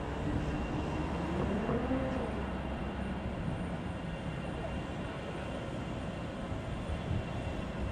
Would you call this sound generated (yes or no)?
no